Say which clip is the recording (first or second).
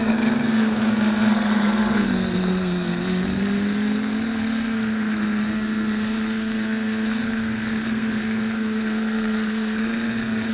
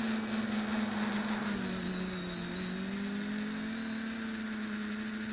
second